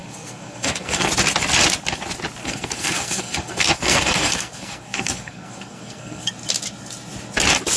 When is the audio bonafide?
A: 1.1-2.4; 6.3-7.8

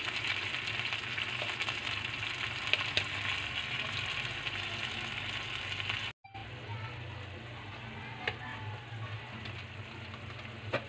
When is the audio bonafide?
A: 0.0-10.9

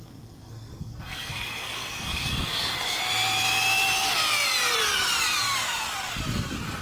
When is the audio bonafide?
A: 3.0-6.8

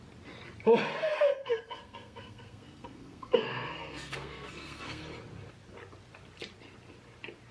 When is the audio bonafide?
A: 0.0-1.0; 5.0-7.5

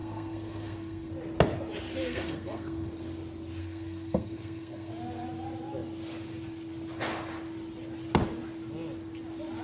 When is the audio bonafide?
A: 1.1-2.0; 2.9-3.6; 4.9-9.6

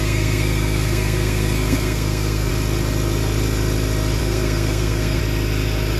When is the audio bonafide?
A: 2.5-4.2; 5.2-6.0

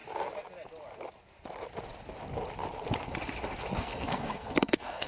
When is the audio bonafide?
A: 0.0-3.7